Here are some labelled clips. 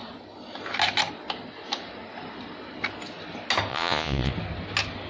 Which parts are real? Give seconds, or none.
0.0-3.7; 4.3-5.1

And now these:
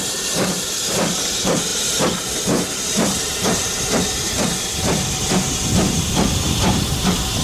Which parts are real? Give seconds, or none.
none

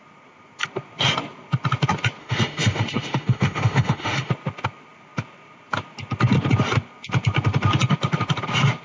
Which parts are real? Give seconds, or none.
0.0-2.2; 4.3-8.8

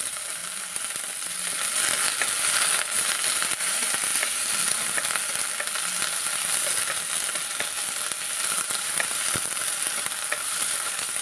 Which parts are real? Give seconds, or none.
0.4-3.6; 4.1-8.3; 9.6-10.4

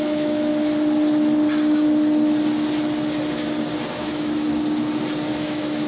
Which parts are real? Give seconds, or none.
0.5-4.0; 4.5-5.3

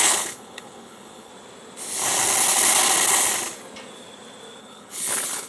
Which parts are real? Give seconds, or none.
1.3-4.6

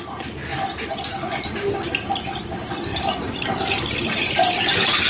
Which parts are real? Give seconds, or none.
0.0-0.5; 1.5-2.9

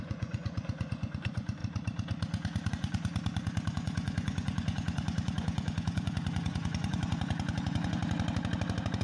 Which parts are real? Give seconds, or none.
1.6-2.7; 3.1-3.7; 8.0-9.0